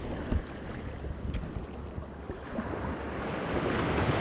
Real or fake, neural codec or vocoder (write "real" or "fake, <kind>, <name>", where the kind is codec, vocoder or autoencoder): real